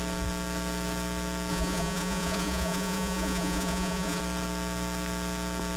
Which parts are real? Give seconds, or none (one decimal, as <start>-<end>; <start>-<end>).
0.0-1.5; 4.2-5.8